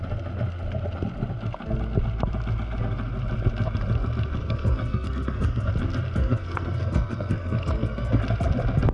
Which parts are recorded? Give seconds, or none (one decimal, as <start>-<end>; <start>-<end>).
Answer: 0.0-4.4; 5.7-6.2; 8.2-8.9